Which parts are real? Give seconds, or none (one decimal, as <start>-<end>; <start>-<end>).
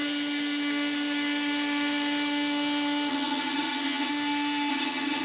0.0-3.1; 4.1-4.7